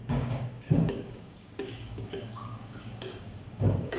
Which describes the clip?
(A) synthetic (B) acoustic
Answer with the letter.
A